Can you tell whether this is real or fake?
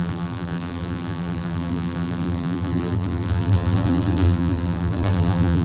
fake